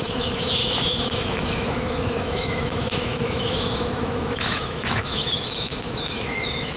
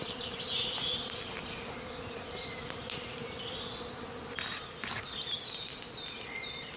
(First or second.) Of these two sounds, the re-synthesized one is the first